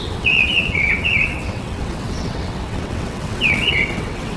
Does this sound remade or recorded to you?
remade